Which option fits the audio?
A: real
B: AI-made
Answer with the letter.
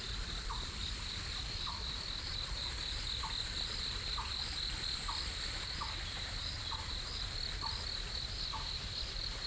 B